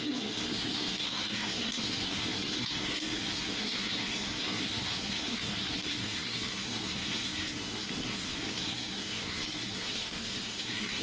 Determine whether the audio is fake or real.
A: fake